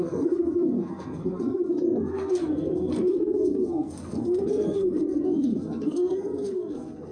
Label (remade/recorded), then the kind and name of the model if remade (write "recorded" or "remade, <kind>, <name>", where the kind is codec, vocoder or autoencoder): remade, codec, SNAC